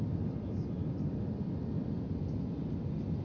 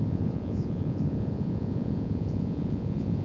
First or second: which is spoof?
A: second